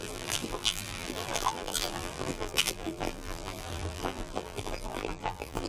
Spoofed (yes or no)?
yes